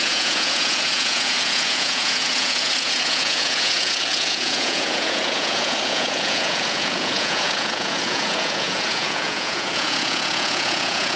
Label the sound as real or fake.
fake